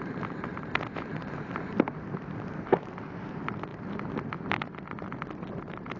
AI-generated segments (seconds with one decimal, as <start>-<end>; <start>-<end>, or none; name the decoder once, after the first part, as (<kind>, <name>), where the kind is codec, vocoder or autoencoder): none